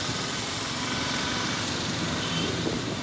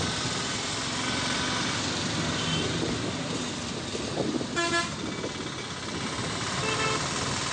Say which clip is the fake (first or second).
first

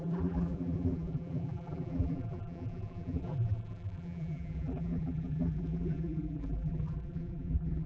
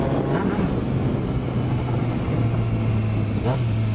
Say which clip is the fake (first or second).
first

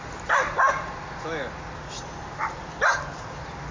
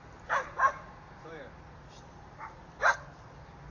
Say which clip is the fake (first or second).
second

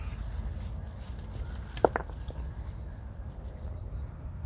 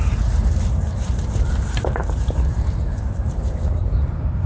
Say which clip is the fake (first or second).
second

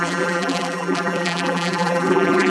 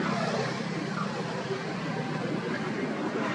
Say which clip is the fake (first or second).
first